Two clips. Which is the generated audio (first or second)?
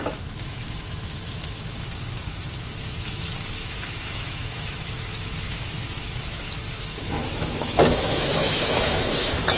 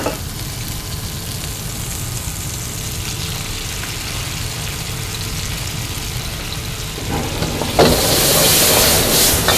first